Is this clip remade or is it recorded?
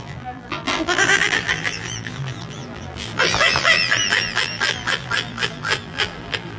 remade